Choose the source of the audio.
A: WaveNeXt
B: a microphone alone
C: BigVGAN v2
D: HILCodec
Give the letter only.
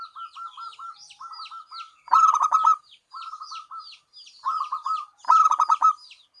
B